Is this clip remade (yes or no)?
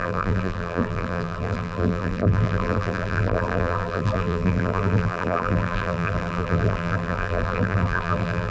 yes